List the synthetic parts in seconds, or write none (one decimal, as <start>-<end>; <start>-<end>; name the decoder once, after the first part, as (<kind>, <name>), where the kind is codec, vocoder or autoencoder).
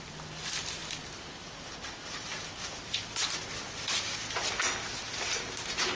none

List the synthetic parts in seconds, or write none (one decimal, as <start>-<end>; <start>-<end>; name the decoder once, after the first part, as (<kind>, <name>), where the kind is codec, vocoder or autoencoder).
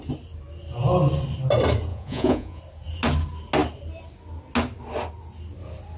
1.9-2.6 (vocoder, Vocos)